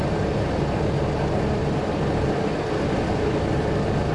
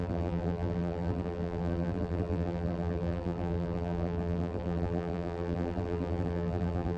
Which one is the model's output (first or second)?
second